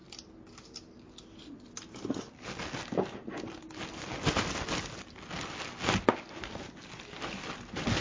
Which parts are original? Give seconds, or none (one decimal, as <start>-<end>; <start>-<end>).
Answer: 0.0-8.0